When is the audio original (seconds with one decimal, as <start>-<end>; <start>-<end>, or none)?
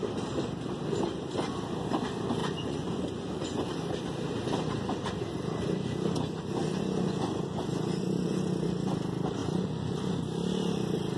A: 0.0-2.4; 3.7-6.6; 8.9-9.4; 10.2-11.2